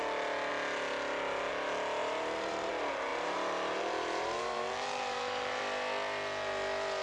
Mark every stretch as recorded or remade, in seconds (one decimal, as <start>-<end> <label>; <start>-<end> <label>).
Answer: 0.0-2.0 recorded; 2.0-2.7 remade; 2.7-3.1 recorded; 3.1-5.6 remade; 5.6-7.0 recorded